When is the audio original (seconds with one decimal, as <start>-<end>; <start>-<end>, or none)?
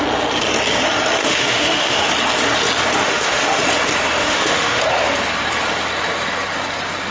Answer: 0.0-1.2; 2.1-3.0; 3.6-4.2; 4.8-7.1